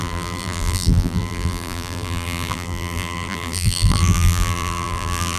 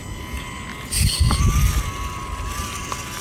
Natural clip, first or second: second